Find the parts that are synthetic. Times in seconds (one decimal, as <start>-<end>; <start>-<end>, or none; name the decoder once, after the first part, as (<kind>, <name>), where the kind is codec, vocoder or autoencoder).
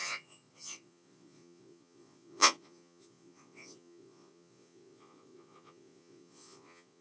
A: 0.0-7.0 (vocoder, Vocos)